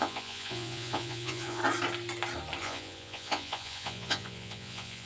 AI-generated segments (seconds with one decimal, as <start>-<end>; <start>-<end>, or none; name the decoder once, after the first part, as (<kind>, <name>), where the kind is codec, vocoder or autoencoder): 0.0-1.6 (vocoder, Vocos); 2.6-5.1